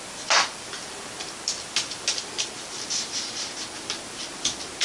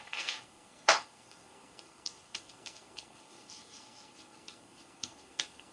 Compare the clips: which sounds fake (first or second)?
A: second